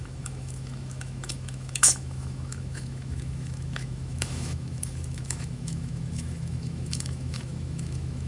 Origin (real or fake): fake